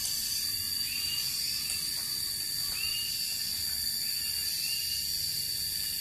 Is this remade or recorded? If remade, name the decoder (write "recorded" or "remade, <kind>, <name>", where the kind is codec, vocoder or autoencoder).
recorded